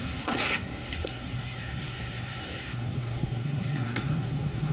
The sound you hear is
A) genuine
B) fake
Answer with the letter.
B